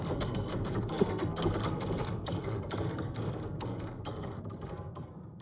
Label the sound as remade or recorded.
remade